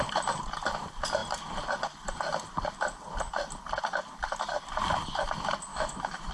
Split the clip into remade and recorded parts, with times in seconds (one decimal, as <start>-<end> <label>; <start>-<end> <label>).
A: 0.0-5.7 recorded; 5.7-6.3 remade

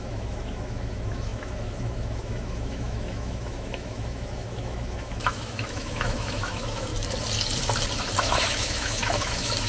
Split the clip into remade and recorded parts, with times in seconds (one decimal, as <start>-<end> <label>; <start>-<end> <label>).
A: 0.0-6.9 remade; 6.9-8.2 recorded; 8.2-9.7 remade

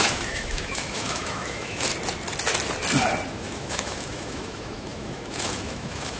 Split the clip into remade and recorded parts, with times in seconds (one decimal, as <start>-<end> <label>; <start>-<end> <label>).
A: 0.0-1.9 remade; 1.9-3.3 recorded; 3.3-6.2 remade

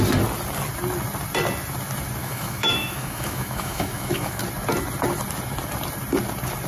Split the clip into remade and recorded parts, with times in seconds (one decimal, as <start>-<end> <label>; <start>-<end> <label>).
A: 0.0-2.2 recorded; 2.2-4.4 remade; 4.4-6.7 recorded

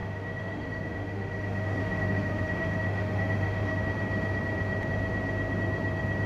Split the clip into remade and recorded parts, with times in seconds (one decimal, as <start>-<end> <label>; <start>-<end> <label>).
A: 0.0-3.8 remade; 3.8-6.3 recorded

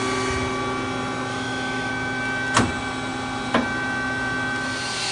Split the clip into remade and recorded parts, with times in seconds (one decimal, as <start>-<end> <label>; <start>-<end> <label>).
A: 0.0-1.3 recorded; 1.3-1.9 remade; 1.9-5.1 recorded

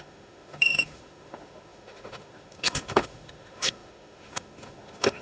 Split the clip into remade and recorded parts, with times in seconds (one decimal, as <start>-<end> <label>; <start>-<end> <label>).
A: 0.0-5.2 remade